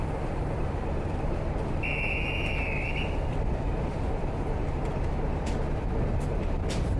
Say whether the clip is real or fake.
fake